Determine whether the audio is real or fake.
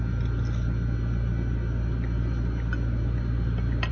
real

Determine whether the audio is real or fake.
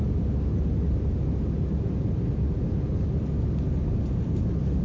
real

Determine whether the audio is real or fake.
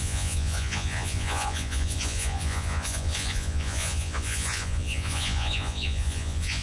fake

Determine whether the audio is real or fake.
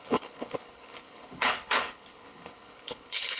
fake